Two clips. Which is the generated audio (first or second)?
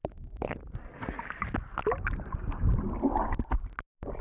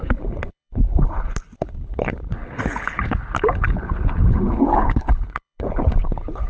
second